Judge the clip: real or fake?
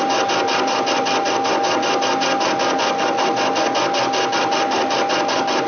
real